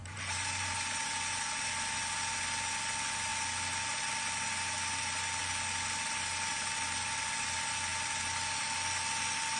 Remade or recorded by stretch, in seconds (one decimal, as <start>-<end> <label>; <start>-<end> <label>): 0.0-1.0 remade; 1.0-9.6 recorded